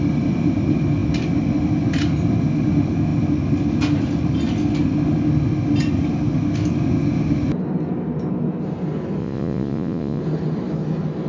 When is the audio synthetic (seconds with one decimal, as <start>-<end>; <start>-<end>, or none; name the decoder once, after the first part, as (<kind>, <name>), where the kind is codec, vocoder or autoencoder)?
9.2-10.2 (vocoder, Vocos)